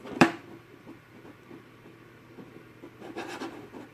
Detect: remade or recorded remade